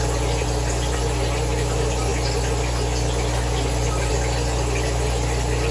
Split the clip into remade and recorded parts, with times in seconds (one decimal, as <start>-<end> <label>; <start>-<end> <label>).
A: 0.0-5.7 recorded